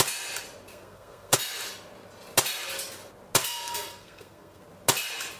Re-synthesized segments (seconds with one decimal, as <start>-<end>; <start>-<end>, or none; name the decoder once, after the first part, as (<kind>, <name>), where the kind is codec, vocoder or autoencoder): 0.7-1.4 (codec, SNAC); 3.4-4.6

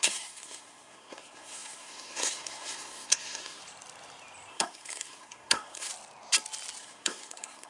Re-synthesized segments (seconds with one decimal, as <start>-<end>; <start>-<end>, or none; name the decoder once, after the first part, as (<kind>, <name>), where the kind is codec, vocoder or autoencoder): 0.0-3.6 (codec, SNAC); 4.5-5.9; 6.8-7.7

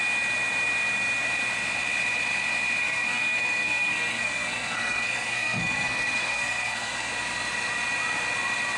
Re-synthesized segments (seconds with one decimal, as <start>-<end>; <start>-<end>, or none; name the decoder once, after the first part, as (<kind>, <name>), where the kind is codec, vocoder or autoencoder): 2.8-7.1 (codec, SNAC)